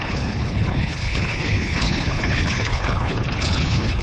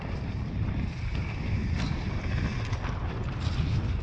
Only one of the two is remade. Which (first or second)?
first